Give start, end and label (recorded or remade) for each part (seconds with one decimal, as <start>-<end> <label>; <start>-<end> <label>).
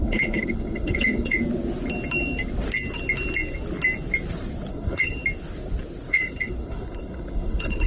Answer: 0.0-1.4 remade; 1.4-4.7 recorded; 4.7-5.2 remade; 5.2-6.1 recorded; 6.1-7.9 remade